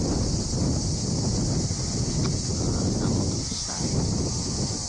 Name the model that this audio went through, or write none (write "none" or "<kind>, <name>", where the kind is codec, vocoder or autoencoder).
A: none